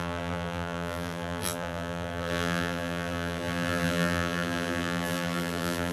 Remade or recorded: remade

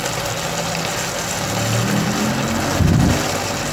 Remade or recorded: recorded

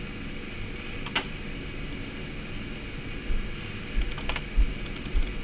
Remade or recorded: recorded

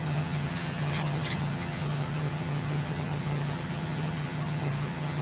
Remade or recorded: remade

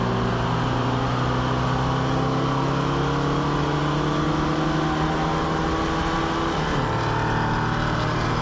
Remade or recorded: recorded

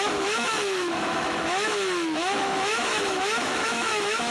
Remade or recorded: remade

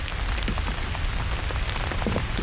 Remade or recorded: recorded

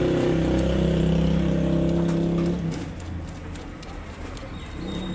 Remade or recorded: recorded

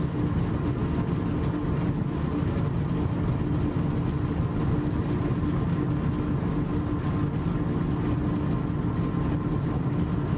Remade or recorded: recorded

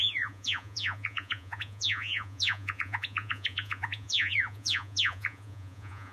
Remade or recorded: remade